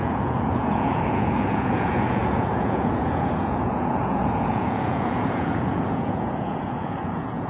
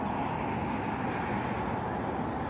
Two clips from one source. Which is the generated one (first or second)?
first